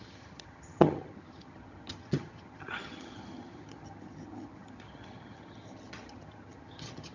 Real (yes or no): no